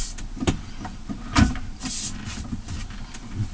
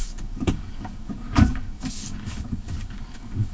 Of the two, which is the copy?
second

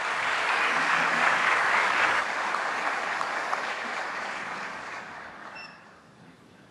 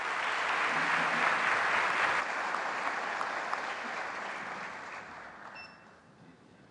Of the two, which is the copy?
first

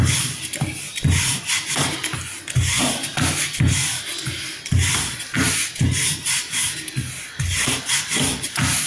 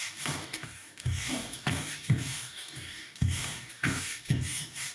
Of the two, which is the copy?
second